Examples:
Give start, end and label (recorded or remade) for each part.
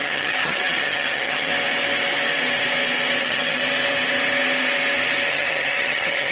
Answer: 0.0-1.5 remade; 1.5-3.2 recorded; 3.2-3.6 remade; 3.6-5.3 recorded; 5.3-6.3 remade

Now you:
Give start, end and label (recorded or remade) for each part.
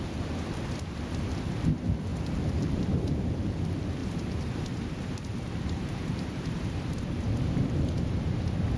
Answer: 0.0-2.1 recorded; 2.1-3.3 remade; 3.3-4.0 recorded; 4.0-8.4 remade; 8.4-8.8 recorded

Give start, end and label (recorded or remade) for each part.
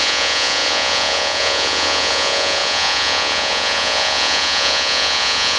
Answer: 0.0-5.6 remade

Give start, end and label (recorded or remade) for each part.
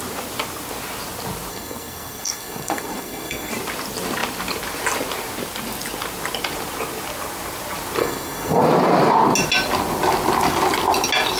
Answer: 0.0-1.5 recorded; 1.5-3.5 remade; 3.5-8.0 recorded; 8.0-8.6 remade; 8.6-11.4 recorded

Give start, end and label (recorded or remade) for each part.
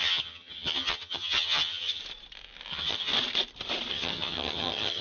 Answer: 0.0-2.0 remade; 2.0-2.7 recorded; 2.7-3.1 remade; 3.1-3.9 recorded; 3.9-5.0 remade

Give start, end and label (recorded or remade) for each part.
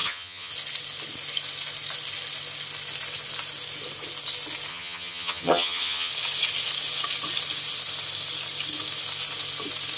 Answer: 0.0-0.5 remade; 0.5-4.7 recorded; 4.7-6.1 remade; 6.1-10.0 recorded